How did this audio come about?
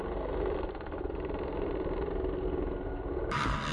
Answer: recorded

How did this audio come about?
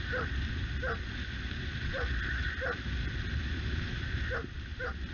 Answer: recorded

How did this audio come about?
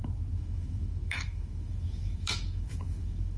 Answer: remade